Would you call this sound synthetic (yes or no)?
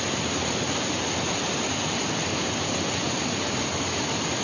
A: no